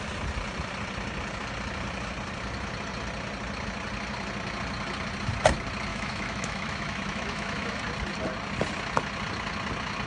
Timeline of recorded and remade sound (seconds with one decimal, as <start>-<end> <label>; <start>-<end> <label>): 0.0-5.9 recorded; 5.9-7.8 remade; 7.8-10.1 recorded